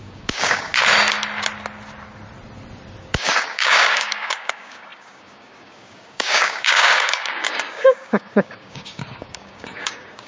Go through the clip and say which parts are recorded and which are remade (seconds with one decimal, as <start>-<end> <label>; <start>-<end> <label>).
0.0-0.7 remade; 0.7-3.0 recorded; 3.0-10.3 remade